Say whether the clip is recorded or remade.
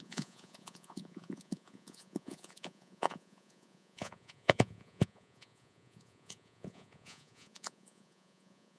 remade